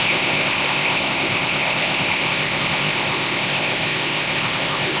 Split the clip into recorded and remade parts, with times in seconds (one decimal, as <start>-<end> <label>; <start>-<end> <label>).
0.0-5.0 remade